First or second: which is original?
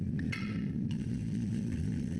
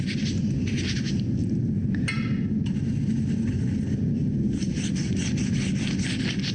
second